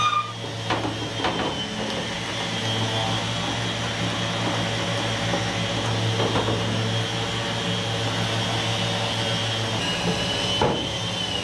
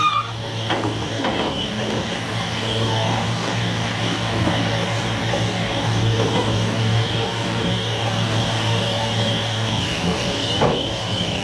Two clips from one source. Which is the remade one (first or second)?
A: second